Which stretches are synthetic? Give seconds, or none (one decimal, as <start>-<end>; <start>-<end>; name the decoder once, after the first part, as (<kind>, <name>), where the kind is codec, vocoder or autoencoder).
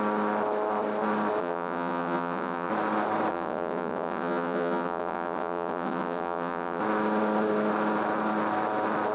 1.4-2.7 (vocoder, WaveNeXt); 3.3-6.8